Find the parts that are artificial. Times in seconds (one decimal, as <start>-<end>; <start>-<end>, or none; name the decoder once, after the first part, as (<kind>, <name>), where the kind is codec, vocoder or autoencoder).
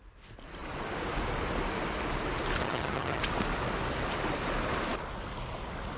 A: 2.6-3.2 (vocoder, HiFi-GAN)